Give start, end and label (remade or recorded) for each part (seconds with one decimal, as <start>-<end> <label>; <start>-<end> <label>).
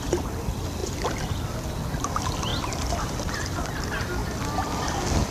0.0-2.5 recorded; 2.5-3.8 remade; 3.8-4.2 recorded; 4.2-5.3 remade